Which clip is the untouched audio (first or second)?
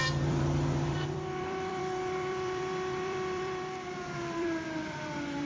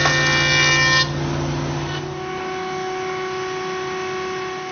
second